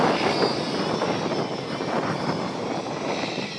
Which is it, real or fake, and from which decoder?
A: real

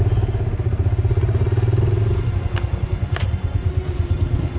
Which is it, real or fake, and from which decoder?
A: real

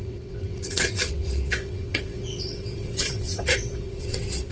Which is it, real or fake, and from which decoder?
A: fake, vocoder, WaveNeXt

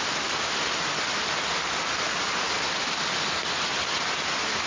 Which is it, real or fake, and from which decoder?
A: real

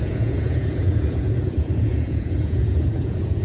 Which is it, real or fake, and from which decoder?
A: fake, vocoder, Vocos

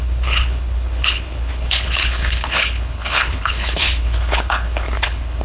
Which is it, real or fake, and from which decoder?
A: fake, codec, HILCodec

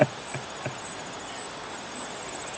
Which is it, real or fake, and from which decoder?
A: real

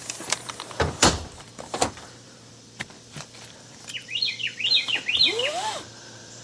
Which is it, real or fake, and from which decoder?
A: fake, vocoder, BigVGAN v2